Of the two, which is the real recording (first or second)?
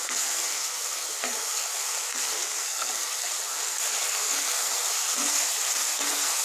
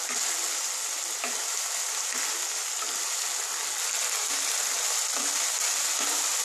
second